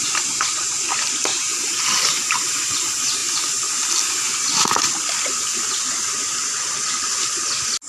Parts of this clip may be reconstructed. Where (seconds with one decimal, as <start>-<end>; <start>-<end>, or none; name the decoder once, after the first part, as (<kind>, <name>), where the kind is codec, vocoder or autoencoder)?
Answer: 1.3-2.8 (vocoder, BigVGAN v2)